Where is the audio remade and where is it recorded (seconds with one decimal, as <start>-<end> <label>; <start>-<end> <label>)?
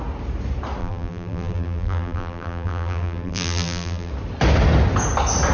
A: 0.0-0.8 recorded; 0.8-4.1 remade; 4.1-5.5 recorded